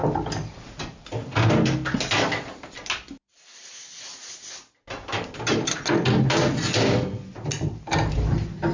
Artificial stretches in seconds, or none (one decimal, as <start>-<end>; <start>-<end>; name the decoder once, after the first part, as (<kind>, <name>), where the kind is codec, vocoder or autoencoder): none